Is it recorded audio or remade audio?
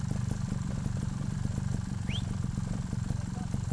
recorded